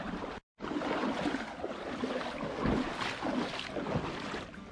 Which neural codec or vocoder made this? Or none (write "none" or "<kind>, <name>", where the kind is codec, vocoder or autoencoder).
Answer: none